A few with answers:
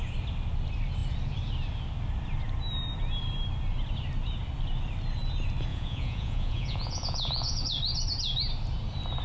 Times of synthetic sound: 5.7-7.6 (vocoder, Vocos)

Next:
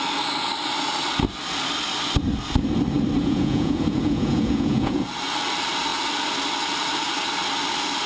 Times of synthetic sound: 3.2-5.0 (vocoder, Vocos)

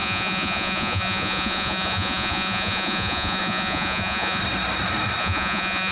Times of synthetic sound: 0.0-4.4 (vocoder, Vocos); 5.2-5.9

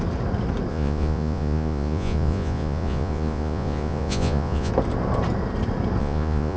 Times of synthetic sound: 0.7-4.7 (vocoder, Vocos); 6.0-6.6

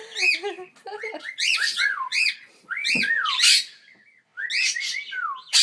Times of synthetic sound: 0.8-3.1 (vocoder, Vocos)